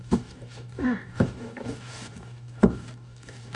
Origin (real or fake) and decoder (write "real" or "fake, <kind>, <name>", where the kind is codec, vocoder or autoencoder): fake, codec, DAC